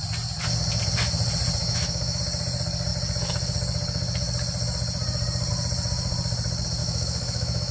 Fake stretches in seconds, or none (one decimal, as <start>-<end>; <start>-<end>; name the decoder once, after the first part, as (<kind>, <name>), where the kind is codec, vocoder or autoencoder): 1.6-2.2 (autoencoder, DAC-VAE); 6.8-7.7